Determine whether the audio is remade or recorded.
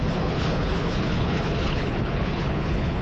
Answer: remade